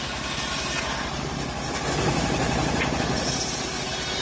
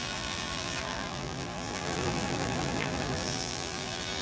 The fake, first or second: second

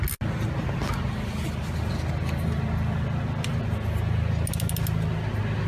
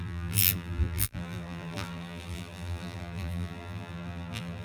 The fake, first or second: second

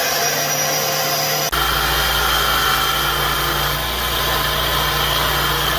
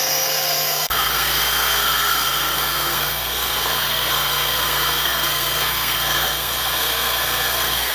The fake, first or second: second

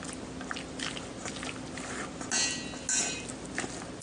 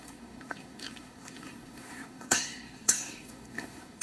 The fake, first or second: second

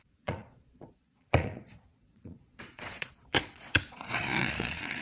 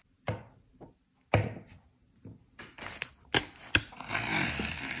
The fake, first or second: first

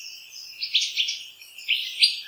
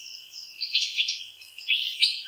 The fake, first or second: second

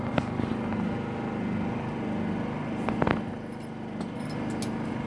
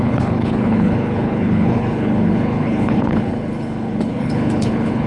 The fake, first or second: second